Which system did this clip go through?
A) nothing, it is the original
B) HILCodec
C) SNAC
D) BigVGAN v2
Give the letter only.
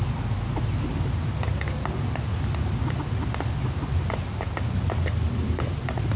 A